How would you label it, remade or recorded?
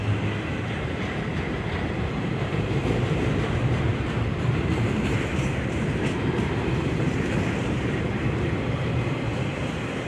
remade